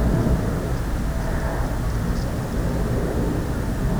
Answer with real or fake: real